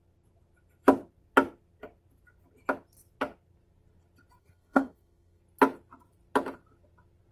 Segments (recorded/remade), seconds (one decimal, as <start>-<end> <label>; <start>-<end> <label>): 0.0-4.4 recorded; 4.4-5.4 remade; 5.4-7.3 recorded